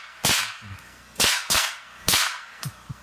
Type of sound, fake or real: fake